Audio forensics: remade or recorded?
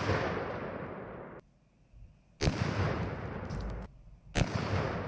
recorded